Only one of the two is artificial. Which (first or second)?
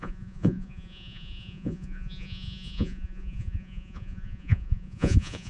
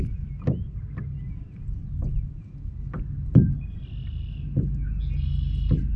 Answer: first